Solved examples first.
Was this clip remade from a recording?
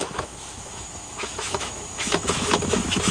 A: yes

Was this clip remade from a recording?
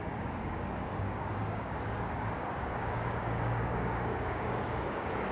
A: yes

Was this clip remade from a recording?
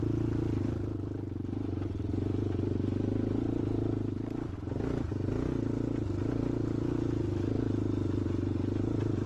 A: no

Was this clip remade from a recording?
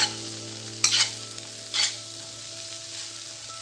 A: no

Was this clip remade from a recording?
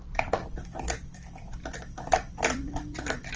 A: yes